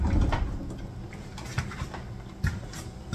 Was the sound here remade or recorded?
recorded